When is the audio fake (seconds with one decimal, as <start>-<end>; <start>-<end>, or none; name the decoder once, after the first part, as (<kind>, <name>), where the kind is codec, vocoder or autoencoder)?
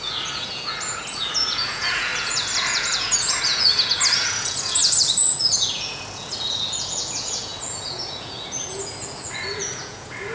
0.0-10.3 (vocoder, Vocos)